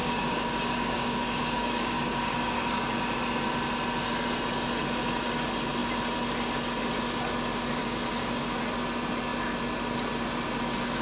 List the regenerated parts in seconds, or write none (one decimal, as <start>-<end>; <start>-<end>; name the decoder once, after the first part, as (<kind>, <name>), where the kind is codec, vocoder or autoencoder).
0.0-2.9 (codec, DAC); 7.8-8.6